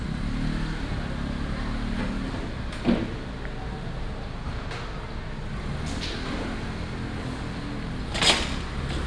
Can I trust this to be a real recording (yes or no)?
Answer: yes